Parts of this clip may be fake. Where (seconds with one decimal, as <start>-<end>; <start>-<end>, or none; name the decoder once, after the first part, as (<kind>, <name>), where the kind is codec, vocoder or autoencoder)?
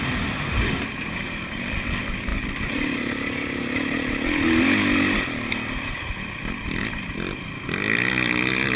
none